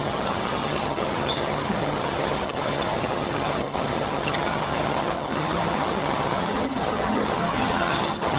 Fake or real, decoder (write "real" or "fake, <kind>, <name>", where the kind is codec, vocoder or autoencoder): fake, vocoder, HiFi-GAN